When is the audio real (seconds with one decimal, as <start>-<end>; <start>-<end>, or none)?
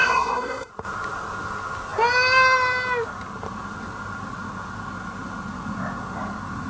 0.7-6.7